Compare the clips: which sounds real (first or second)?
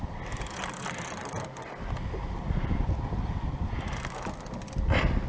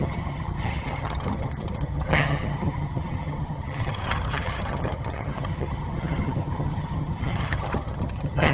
first